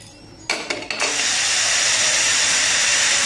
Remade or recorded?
recorded